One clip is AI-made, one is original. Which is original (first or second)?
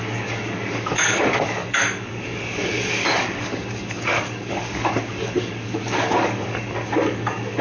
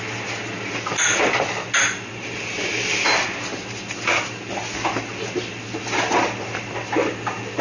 second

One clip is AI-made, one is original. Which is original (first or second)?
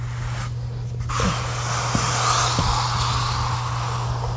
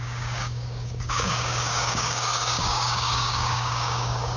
first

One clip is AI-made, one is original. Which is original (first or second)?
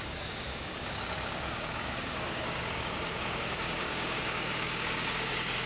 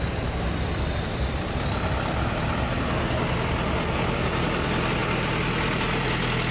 second